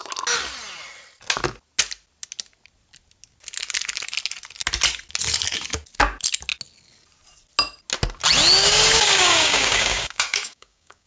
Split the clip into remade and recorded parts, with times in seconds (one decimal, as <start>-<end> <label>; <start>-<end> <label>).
0.0-8.6 recorded; 8.6-11.1 remade